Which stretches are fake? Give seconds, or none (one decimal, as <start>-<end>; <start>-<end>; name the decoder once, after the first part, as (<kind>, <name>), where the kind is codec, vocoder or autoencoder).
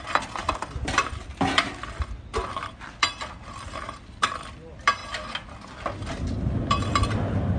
0.0-5.0 (vocoder, BigVGAN v2); 6.1-7.6